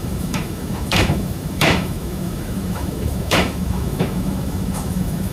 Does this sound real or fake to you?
fake